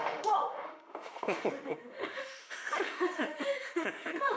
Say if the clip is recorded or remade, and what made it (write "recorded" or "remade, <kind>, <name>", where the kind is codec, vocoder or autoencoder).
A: remade, autoencoder, DAC-VAE